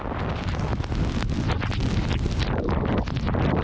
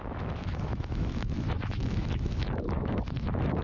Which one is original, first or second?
first